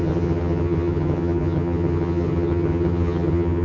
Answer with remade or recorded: remade